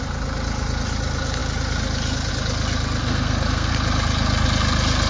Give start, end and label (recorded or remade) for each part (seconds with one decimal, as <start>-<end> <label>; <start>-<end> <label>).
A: 0.0-3.0 recorded; 3.0-3.7 remade; 3.7-5.1 recorded